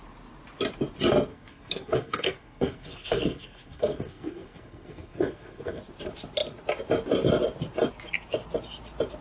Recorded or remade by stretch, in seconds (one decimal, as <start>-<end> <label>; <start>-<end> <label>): 0.0-1.3 recorded; 1.3-5.8 remade; 5.8-9.2 recorded